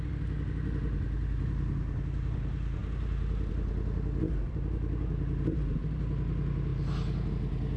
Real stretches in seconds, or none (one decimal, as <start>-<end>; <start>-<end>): 0.0-7.8